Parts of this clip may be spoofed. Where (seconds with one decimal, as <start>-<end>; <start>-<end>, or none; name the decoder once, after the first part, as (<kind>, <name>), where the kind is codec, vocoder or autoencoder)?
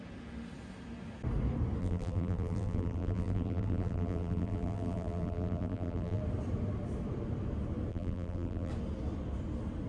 1.8-6.2 (vocoder, BigVGAN v2); 7.9-8.7